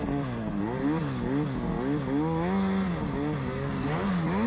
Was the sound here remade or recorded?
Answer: recorded